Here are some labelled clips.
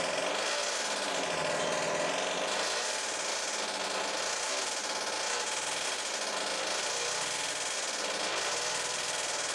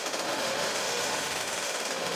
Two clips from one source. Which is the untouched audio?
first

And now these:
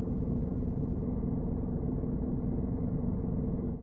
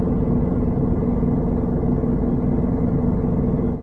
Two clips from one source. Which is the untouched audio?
second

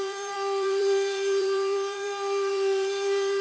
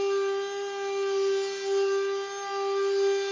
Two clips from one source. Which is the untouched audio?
second